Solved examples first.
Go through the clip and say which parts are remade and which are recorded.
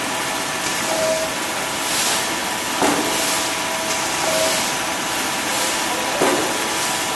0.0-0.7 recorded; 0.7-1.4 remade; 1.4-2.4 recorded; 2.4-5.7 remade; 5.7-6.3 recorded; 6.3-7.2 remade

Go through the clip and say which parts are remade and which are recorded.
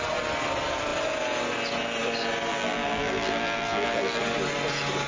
0.0-2.5 recorded; 2.5-4.2 remade; 4.2-5.1 recorded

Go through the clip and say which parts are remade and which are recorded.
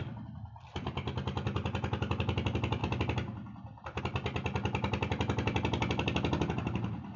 0.0-7.2 recorded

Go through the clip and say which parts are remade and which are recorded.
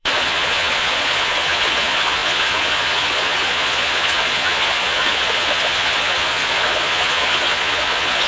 0.0-8.3 remade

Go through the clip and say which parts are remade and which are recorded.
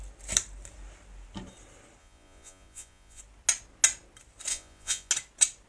0.0-2.0 recorded; 2.0-3.2 remade; 3.2-4.5 recorded; 4.5-5.1 remade; 5.1-5.7 recorded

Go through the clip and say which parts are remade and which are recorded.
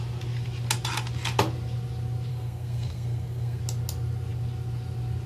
0.0-2.3 recorded; 2.3-3.6 remade; 3.6-5.3 recorded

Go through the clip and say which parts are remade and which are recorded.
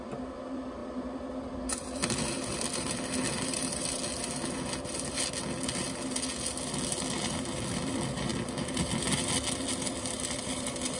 0.0-4.0 remade; 4.0-7.7 recorded; 7.7-8.3 remade; 8.3-9.9 recorded; 9.9-11.0 remade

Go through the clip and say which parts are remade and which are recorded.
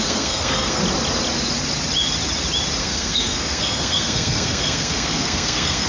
0.0-0.8 remade; 0.8-2.8 recorded; 2.8-5.9 remade